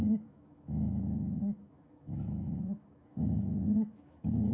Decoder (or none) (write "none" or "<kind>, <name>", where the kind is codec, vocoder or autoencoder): autoencoder, DAC-VAE